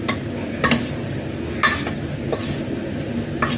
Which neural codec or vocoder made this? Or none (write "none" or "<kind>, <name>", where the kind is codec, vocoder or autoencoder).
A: none